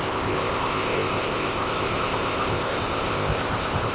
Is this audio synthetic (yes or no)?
yes